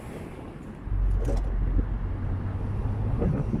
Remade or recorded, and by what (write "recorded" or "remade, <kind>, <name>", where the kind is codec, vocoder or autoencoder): recorded